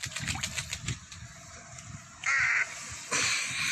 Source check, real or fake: real